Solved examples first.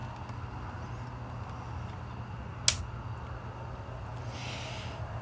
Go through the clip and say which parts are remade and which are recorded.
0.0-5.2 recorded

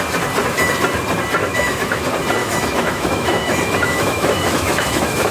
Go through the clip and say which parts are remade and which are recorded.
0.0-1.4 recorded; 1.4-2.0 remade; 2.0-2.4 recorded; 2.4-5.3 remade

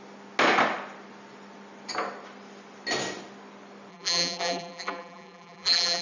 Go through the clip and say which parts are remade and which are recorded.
0.0-3.9 recorded; 3.9-6.0 remade